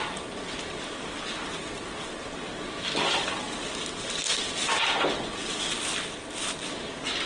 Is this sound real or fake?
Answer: real